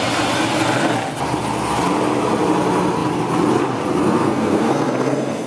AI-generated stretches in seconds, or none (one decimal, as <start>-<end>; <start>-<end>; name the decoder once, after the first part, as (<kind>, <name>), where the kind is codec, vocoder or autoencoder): 4.0-5.5 (codec, SNAC)